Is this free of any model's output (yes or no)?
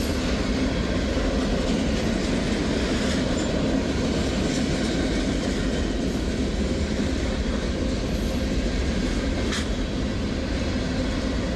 yes